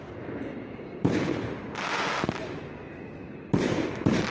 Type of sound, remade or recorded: recorded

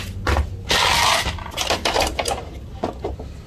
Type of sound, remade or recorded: recorded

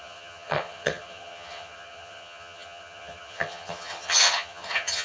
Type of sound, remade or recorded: remade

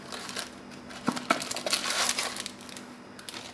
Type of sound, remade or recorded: recorded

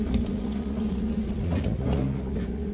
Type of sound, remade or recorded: remade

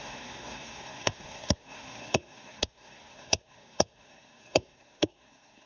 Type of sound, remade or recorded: remade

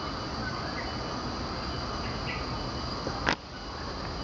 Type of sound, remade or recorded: recorded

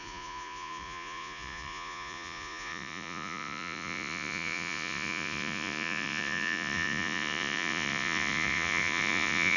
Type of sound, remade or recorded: remade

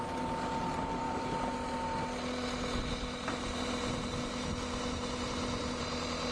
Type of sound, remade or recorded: recorded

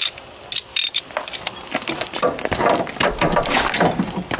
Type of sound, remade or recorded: recorded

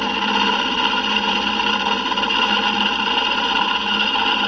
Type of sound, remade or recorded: remade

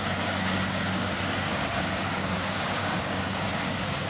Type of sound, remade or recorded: remade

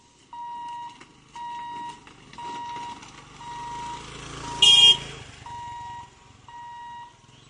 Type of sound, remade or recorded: recorded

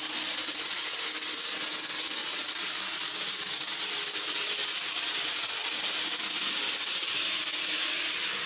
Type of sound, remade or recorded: recorded